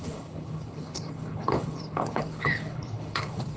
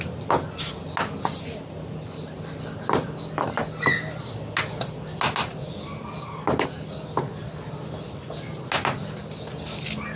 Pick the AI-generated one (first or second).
first